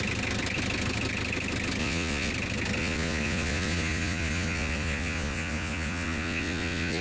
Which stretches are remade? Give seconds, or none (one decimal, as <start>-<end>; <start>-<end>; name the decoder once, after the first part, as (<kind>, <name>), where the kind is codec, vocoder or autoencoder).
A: 1.8-2.3 (vocoder, Vocos); 2.8-7.0